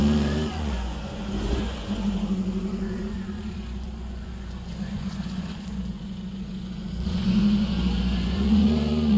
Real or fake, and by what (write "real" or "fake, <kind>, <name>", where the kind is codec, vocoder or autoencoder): fake, vocoder, Vocos